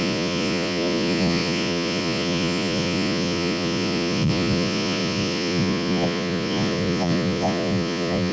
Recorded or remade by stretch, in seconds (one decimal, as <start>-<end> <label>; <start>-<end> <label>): 0.0-8.3 remade